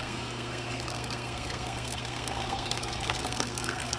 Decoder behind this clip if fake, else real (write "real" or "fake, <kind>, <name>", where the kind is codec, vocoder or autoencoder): fake, codec, SNAC